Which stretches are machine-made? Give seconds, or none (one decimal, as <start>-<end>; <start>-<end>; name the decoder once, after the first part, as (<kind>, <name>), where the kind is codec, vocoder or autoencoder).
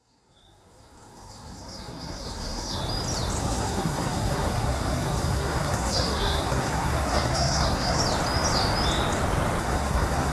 0.0-2.8 (codec, SNAC); 3.4-8.0; 9.6-10.3